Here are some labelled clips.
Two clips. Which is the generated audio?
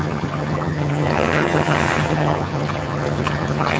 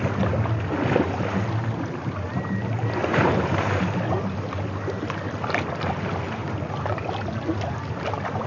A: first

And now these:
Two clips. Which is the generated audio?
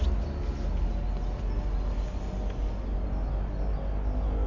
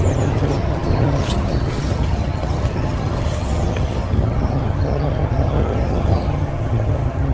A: second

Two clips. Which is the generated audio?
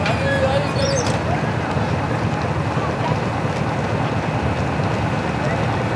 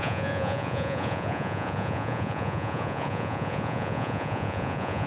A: second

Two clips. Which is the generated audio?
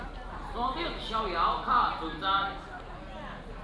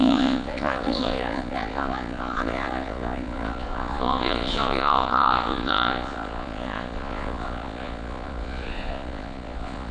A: second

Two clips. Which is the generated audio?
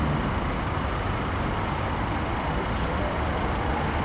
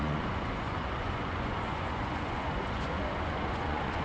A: second